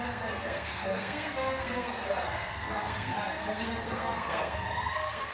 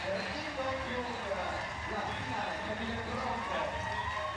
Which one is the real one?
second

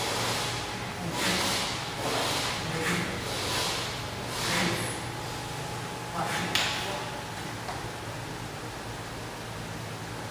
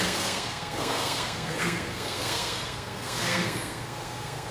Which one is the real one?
first